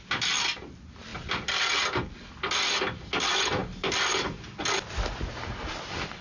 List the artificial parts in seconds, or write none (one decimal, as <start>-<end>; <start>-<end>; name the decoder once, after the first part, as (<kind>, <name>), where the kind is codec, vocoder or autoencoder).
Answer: none